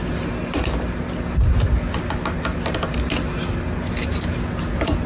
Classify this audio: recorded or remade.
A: recorded